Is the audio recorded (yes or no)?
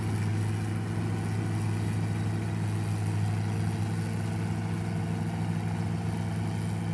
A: yes